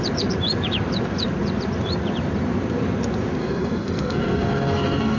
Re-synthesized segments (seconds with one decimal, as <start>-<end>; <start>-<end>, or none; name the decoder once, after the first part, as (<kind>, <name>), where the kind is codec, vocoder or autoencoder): 3.4-5.2 (codec, SNAC)